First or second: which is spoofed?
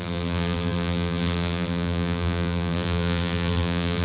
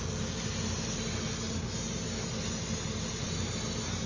first